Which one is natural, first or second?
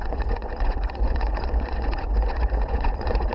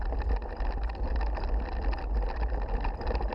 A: second